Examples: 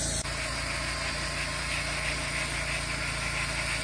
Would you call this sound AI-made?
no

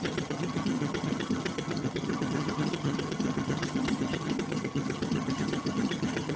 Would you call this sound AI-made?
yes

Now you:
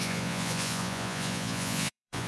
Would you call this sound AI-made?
yes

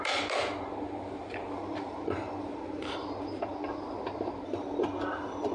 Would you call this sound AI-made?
yes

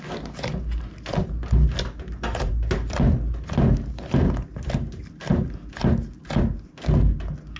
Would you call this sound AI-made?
no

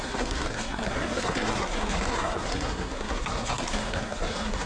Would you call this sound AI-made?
yes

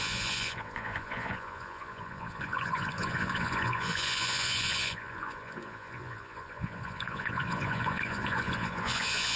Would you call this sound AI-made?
yes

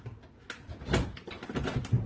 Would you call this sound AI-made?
no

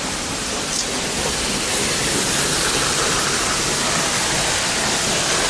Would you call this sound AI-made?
no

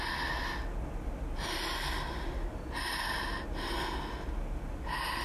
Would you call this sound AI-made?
no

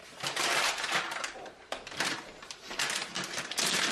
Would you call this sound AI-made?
yes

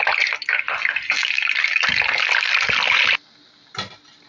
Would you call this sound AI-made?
no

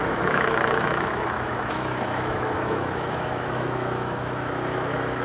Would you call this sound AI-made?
yes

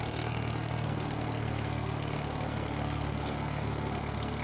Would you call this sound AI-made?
yes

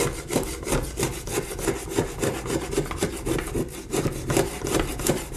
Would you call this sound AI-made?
no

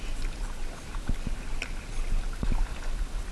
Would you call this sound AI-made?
no